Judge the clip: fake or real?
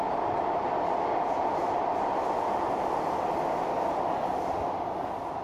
real